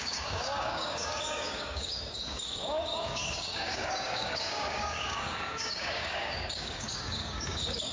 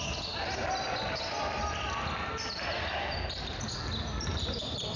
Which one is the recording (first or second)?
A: second